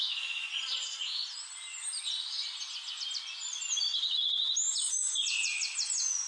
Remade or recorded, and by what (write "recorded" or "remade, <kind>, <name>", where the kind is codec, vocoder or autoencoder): recorded